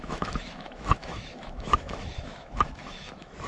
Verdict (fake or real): fake